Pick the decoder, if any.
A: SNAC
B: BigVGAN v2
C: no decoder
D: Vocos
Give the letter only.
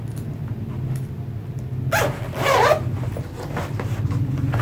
C